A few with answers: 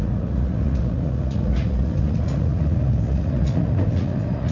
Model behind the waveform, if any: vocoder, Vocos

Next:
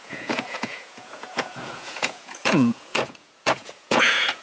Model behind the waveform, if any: vocoder, Vocos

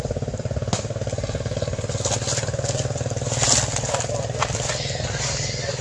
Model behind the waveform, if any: none